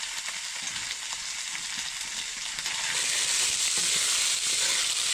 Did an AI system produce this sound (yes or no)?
yes